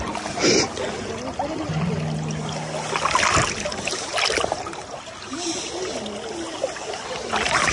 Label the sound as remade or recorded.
recorded